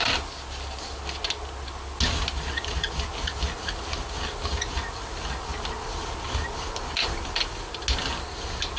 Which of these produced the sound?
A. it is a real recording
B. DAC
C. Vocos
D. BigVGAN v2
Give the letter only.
A